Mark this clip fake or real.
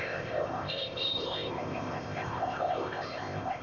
fake